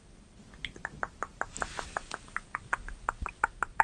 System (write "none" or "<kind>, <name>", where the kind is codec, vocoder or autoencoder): vocoder, BigVGAN v2